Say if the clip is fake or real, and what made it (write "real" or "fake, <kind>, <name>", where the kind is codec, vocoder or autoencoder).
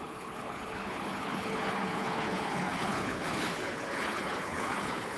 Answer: fake, codec, HILCodec